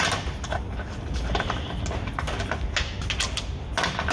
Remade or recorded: recorded